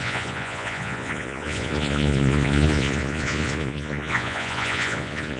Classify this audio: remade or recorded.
remade